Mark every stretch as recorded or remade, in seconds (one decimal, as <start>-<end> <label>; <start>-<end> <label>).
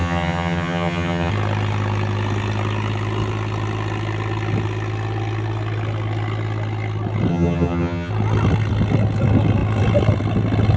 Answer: 0.0-1.3 remade; 1.3-7.3 recorded; 7.3-8.1 remade; 8.1-10.8 recorded